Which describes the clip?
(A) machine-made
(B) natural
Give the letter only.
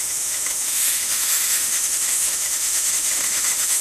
A